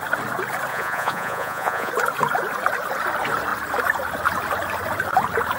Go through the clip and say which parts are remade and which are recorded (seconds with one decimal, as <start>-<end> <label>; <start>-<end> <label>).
0.0-0.7 recorded; 0.7-1.9 remade; 1.9-5.6 recorded